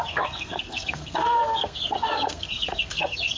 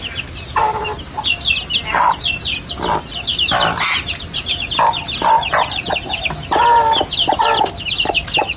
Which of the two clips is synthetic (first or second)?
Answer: first